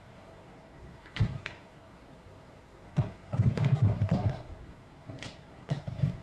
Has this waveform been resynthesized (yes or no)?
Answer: yes